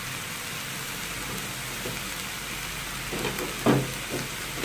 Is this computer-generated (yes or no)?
no